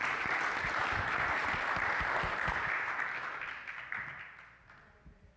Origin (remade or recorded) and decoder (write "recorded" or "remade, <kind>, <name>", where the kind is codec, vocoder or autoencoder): recorded